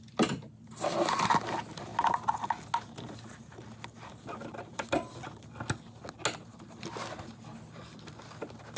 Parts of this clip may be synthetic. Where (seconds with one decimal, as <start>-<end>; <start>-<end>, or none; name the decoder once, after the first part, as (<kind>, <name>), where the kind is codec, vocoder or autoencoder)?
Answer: none